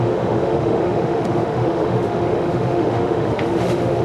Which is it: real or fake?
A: fake